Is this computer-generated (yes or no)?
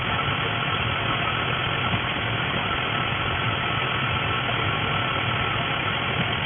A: no